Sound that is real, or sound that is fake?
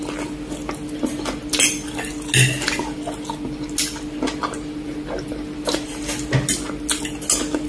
real